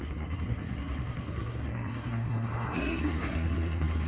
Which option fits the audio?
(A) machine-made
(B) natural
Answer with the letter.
A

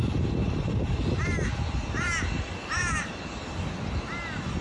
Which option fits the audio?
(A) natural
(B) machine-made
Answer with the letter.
A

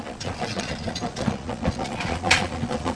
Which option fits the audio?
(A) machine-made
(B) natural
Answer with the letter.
A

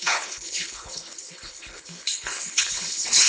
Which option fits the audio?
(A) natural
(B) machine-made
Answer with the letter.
B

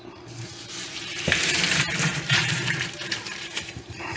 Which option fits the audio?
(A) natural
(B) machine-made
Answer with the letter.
B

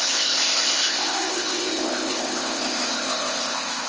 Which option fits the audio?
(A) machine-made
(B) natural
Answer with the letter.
A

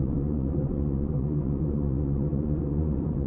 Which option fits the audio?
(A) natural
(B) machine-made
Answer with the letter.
B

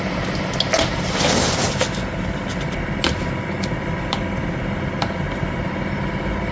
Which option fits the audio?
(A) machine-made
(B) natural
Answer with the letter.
B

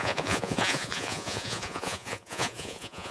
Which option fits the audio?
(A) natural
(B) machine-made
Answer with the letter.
B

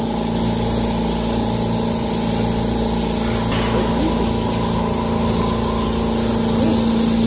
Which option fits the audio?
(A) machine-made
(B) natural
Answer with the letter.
B